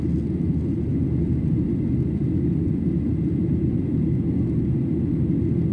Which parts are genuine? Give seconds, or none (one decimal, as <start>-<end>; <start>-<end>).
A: 0.0-5.7